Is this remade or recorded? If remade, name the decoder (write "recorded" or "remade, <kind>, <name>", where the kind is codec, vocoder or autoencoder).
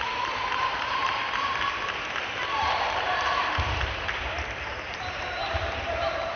remade, vocoder, BigVGAN v2